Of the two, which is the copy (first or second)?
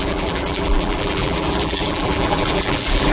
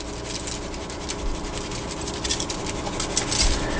first